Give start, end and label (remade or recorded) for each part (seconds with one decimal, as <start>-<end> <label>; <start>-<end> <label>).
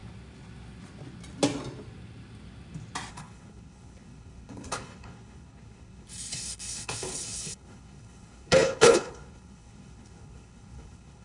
0.0-3.1 recorded; 3.1-11.2 remade